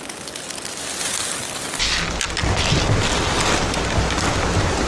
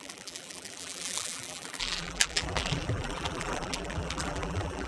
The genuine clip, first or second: first